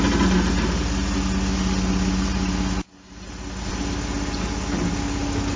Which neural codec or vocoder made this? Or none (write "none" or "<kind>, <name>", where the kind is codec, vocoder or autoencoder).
none